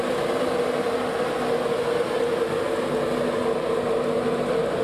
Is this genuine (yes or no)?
yes